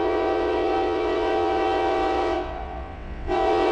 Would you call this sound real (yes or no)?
no